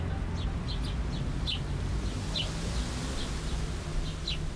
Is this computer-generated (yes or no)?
no